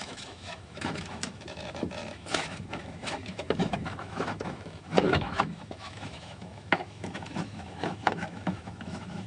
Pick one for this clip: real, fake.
fake